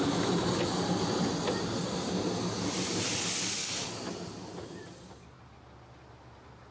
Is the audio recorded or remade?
recorded